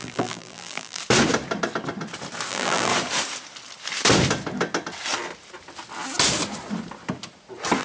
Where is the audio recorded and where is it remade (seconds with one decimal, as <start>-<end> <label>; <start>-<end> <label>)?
0.0-1.0 remade; 1.0-2.5 recorded; 2.5-2.9 remade; 2.9-7.8 recorded